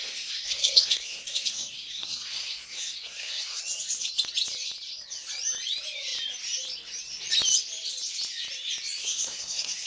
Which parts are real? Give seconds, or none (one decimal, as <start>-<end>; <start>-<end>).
3.6-9.0